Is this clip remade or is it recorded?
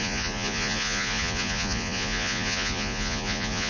remade